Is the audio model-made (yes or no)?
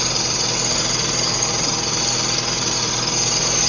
no